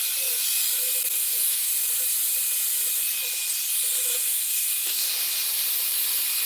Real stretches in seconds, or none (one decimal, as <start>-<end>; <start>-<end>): 0.0-1.1; 1.7-4.1; 5.1-6.5